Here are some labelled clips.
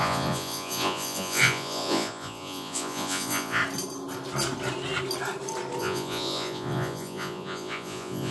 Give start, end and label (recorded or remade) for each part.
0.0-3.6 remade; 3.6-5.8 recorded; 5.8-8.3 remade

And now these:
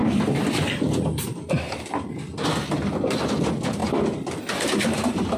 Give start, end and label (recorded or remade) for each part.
0.0-5.4 remade

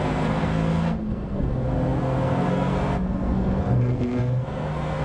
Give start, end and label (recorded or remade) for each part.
0.0-5.0 remade

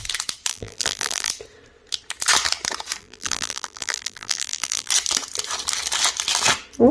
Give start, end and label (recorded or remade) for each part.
0.0-0.5 recorded; 0.5-1.3 remade; 1.3-3.0 recorded; 3.0-4.9 remade; 4.9-6.9 recorded

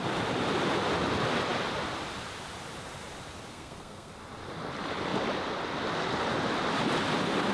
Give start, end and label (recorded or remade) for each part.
0.0-3.5 recorded; 3.5-4.1 remade; 4.1-7.5 recorded